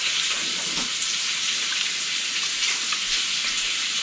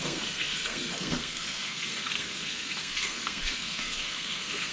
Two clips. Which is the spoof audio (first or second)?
second